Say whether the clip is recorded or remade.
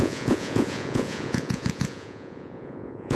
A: remade